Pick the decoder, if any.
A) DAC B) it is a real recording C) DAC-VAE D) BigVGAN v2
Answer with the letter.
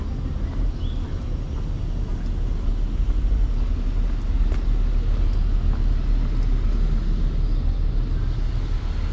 B